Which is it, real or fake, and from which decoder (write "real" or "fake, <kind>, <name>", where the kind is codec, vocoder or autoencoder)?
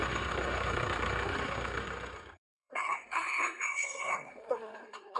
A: fake, codec, SNAC